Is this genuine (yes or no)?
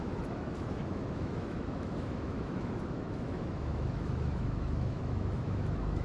no